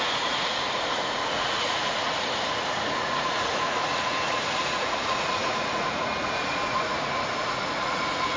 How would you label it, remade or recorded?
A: remade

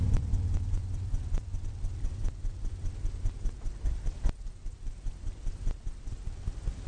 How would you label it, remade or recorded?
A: remade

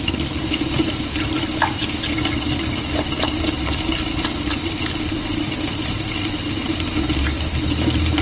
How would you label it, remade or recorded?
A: recorded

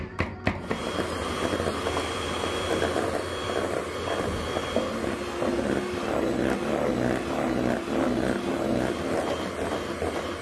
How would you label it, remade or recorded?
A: recorded